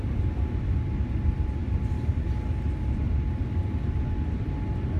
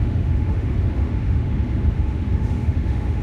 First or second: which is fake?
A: second